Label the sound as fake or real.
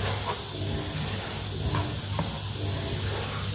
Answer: real